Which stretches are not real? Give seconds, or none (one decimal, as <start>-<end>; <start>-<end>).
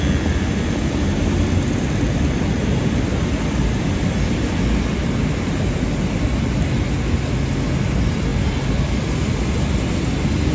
none